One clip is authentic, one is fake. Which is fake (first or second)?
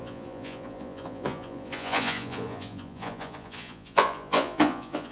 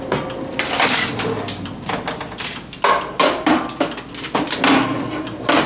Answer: first